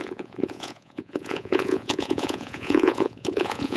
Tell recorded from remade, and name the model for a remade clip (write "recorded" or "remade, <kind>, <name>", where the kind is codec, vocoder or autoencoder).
remade, vocoder, Vocos